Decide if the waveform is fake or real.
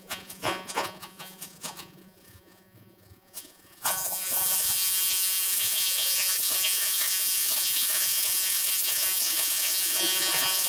fake